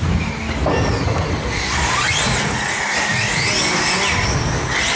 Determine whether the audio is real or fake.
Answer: real